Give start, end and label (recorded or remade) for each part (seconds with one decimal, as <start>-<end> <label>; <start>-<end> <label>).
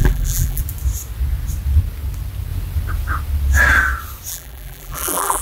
0.0-0.6 remade; 0.6-4.3 recorded; 4.3-5.4 remade